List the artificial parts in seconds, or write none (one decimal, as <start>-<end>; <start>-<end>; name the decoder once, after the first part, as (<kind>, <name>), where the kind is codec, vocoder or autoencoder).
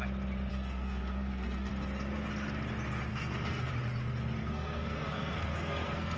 0.5-1.7 (codec, SNAC); 3.1-3.7; 4.4-6.2